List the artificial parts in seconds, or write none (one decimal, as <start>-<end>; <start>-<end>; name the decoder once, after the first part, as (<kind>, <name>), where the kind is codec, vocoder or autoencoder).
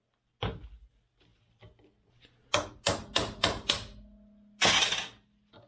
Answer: none